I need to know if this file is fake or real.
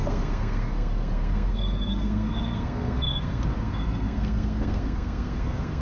fake